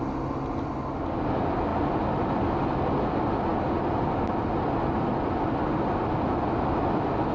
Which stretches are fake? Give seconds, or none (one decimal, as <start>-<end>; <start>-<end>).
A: none

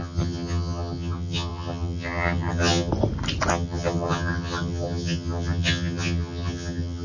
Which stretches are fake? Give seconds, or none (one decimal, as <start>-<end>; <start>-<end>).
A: 0.0-2.9; 3.5-7.0

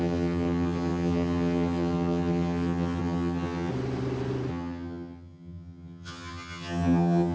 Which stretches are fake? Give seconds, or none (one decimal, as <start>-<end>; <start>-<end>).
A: 0.0-3.7; 4.5-7.3

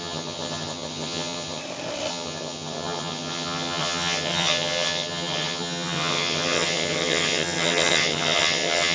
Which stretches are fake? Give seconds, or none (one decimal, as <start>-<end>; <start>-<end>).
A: 0.0-1.6; 2.1-8.9

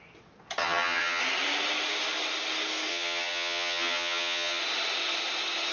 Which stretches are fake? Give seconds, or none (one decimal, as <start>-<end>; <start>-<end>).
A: 0.6-1.2; 2.9-4.6

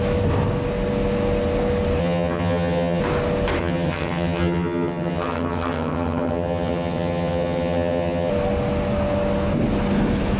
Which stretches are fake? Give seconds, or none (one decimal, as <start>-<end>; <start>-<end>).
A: 2.0-3.0; 3.6-8.3